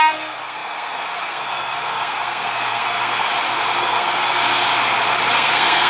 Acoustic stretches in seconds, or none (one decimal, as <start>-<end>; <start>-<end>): 3.3-3.8; 4.6-5.3